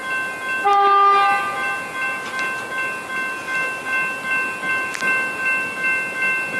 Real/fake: real